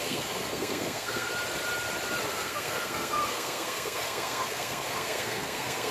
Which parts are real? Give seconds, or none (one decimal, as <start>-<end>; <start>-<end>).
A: 1.3-2.3